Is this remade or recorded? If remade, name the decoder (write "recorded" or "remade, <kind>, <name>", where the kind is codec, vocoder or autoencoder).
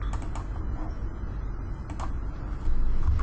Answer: recorded